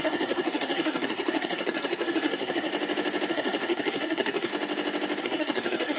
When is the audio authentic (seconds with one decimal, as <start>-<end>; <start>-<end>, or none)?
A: 2.7-3.3; 4.5-5.2